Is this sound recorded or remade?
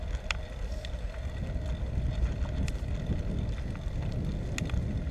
recorded